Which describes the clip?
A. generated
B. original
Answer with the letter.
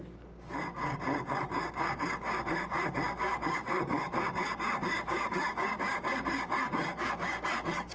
A